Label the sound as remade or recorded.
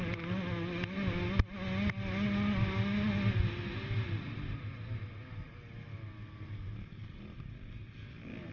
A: recorded